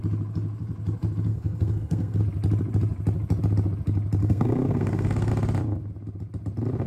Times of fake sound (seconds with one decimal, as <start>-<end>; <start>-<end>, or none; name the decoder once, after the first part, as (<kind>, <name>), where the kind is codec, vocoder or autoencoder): 1.3-2.2 (codec, SNAC); 4.2-5.3